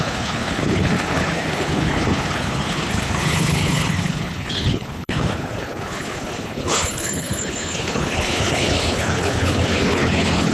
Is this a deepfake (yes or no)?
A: yes